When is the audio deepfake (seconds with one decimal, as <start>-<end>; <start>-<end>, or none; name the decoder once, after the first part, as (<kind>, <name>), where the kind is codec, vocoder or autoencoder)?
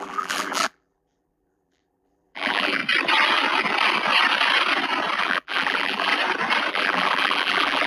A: 0.0-2.8 (vocoder, BigVGAN v2); 5.2-6.1; 6.7-7.9